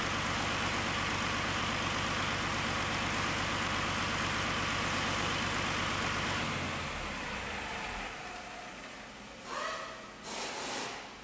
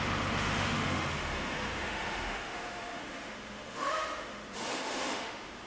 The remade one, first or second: second